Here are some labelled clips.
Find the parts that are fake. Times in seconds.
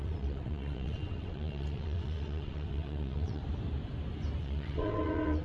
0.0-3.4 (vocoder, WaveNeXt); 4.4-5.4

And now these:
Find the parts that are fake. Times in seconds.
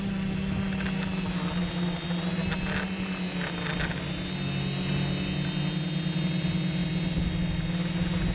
none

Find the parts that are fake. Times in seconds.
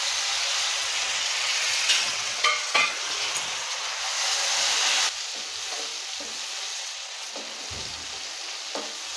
0.8-3.1 (vocoder, WaveNeXt); 6.7-7.3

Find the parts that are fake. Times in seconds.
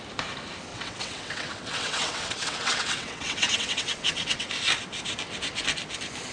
0.7-4.5 (vocoder, WaveNeXt)